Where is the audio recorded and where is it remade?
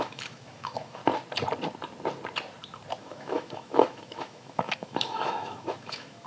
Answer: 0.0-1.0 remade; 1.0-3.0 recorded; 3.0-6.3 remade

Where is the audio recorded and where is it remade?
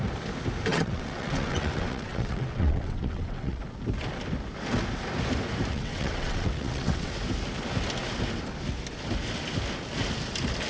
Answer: 0.0-0.7 recorded; 0.7-3.6 remade; 3.6-5.7 recorded; 5.7-7.1 remade; 7.1-10.7 recorded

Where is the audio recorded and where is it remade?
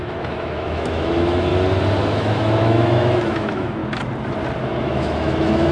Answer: 0.0-1.5 remade; 1.5-2.0 recorded; 2.0-3.8 remade; 3.8-4.7 recorded; 4.7-5.7 remade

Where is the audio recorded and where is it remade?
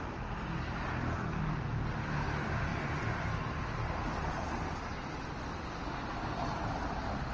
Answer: 0.0-7.3 recorded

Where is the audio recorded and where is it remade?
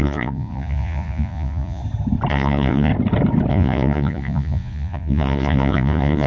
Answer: 0.0-1.8 remade; 1.8-2.3 recorded; 2.3-2.9 remade; 2.9-3.5 recorded; 3.5-6.3 remade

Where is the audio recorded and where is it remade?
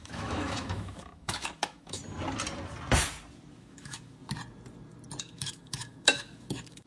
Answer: 0.0-2.0 remade; 2.0-3.6 recorded; 3.6-4.2 remade; 4.2-5.2 recorded; 5.2-6.9 remade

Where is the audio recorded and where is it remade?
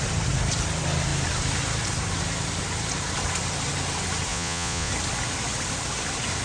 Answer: 0.0-4.3 recorded; 4.3-4.9 remade; 4.9-6.4 recorded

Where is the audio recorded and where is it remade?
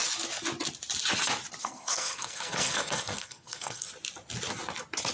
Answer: 0.0-1.6 recorded; 1.6-3.9 remade; 3.9-5.1 recorded